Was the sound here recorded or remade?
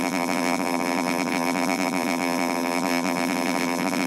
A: remade